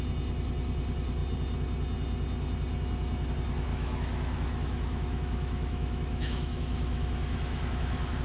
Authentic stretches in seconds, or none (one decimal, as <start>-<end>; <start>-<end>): 0.0-3.7